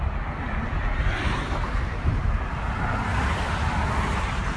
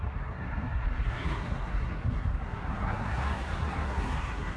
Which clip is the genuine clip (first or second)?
first